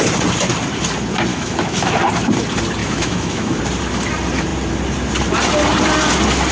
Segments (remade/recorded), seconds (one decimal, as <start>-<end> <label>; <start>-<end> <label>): 0.0-1.3 recorded; 1.3-1.9 remade; 1.9-2.8 recorded; 2.8-3.6 remade; 3.6-6.5 recorded